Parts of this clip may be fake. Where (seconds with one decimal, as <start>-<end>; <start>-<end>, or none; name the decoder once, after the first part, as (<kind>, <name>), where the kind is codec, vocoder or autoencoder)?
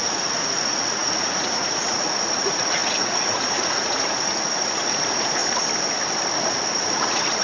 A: 0.0-5.4 (vocoder, Vocos); 6.8-7.4